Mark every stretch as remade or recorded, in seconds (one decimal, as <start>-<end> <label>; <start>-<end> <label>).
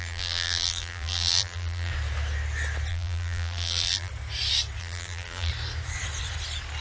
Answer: 0.0-1.9 remade; 1.9-2.9 recorded; 2.9-4.1 remade; 4.1-4.8 recorded; 4.8-5.5 remade; 5.5-6.8 recorded